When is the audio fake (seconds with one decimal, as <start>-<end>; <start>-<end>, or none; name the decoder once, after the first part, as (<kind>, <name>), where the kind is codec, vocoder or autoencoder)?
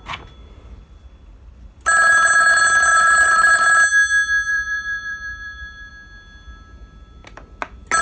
2.9-3.5 (vocoder, BigVGAN v2); 4.5-5.9